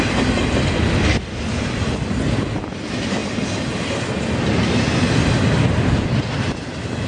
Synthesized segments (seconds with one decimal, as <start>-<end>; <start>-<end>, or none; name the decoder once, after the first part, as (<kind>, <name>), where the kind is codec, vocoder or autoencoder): none